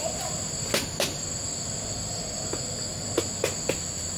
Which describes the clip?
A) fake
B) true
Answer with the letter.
B